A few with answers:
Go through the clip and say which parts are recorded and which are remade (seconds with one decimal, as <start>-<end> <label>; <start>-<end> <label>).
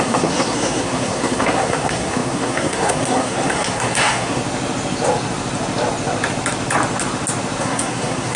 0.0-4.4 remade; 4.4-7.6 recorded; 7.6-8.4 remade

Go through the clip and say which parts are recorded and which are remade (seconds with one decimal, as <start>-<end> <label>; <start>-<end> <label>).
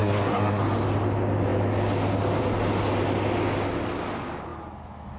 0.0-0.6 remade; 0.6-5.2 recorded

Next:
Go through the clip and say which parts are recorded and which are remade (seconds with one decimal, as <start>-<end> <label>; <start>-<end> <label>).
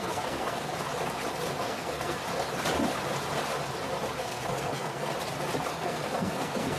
0.0-0.7 remade; 0.7-1.6 recorded; 1.6-2.2 remade; 2.2-4.2 recorded; 4.2-5.1 remade; 5.1-5.7 recorded; 5.7-6.8 remade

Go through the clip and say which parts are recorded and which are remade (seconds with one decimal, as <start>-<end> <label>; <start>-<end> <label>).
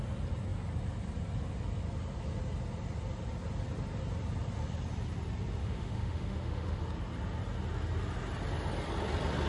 0.0-5.6 recorded; 5.6-6.8 remade; 6.8-9.5 recorded